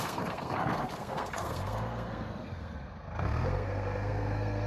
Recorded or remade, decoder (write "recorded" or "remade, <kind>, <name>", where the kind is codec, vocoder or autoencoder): remade, codec, SNAC